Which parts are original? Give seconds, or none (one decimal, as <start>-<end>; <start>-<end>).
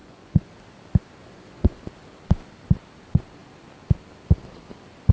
0.5-1.2; 1.8-5.1